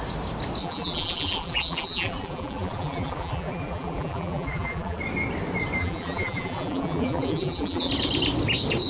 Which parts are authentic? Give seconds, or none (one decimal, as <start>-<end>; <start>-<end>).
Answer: 0.0-0.6; 5.0-5.8; 7.9-8.9